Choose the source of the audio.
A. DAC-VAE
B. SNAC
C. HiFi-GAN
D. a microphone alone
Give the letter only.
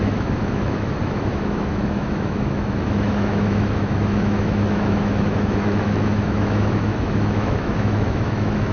A